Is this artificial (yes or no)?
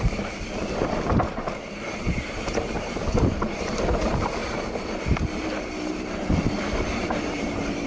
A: yes